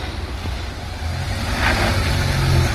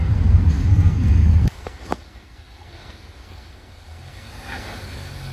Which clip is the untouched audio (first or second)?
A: first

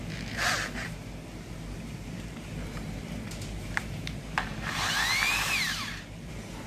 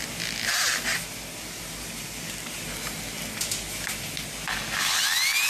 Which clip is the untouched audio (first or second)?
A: second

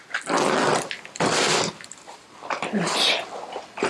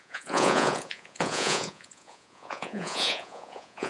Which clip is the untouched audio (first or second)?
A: first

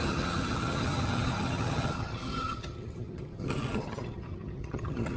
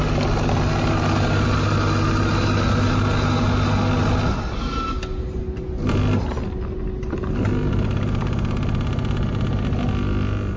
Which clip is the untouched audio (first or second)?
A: second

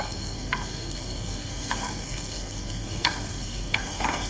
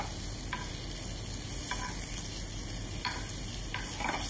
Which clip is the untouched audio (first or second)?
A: second